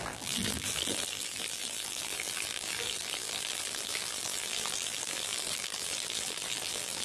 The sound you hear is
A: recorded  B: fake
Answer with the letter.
B